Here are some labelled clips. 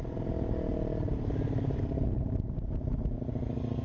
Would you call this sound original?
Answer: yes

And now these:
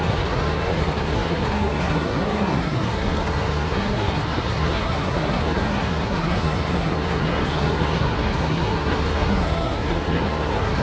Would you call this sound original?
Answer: no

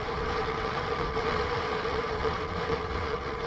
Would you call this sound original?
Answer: no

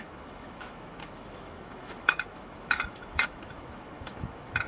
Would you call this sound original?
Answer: no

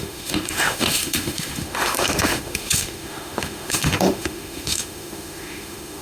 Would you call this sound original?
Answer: no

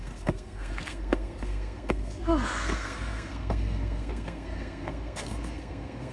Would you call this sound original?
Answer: no